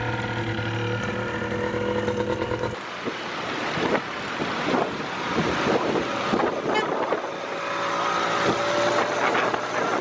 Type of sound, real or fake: real